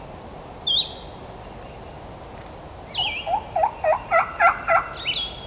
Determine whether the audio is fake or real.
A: real